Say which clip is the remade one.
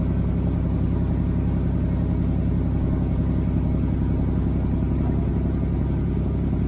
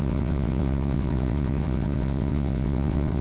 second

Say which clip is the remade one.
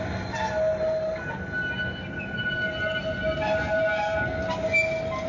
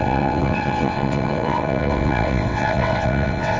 second